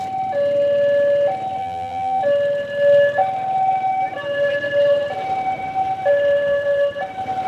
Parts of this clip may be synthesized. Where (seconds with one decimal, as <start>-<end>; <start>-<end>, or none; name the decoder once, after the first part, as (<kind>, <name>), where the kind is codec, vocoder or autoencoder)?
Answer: 1.6-2.2 (vocoder, BigVGAN v2)